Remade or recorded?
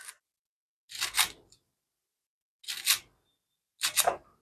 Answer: recorded